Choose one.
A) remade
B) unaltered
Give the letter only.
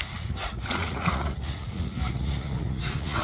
A